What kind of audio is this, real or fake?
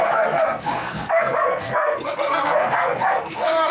fake